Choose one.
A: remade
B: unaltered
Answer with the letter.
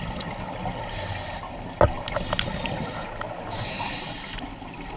B